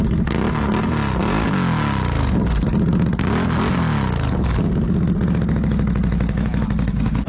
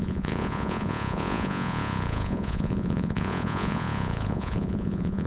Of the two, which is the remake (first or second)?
second